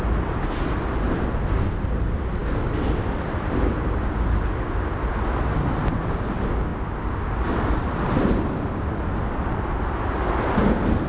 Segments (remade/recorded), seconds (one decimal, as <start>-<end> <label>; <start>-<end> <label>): 0.0-11.1 recorded

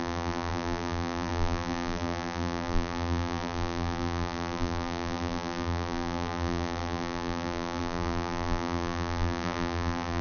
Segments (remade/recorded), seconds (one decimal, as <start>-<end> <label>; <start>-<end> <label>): 0.0-10.2 remade